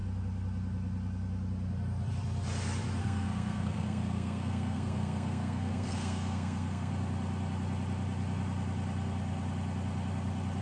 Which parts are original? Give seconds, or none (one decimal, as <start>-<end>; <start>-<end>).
0.0-3.0; 6.9-10.6

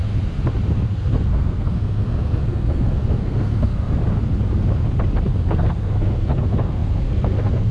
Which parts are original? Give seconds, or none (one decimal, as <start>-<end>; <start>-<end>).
0.0-0.7; 4.0-5.4

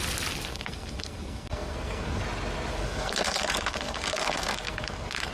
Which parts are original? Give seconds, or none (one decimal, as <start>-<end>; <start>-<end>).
0.0-0.5; 2.2-2.7